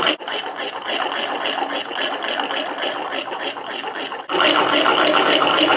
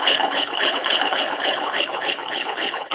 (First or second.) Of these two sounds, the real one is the first